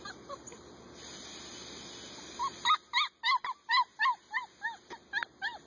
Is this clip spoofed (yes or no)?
no